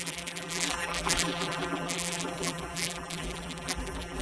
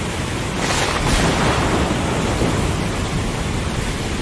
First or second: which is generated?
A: first